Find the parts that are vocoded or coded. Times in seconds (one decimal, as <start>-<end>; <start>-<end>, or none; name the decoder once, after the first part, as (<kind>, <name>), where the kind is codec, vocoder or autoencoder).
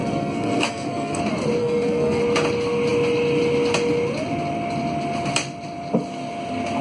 0.0-1.2 (codec, SNAC); 1.6-2.2